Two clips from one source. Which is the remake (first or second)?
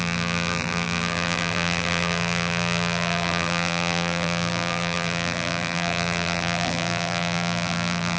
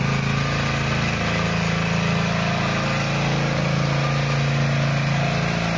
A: first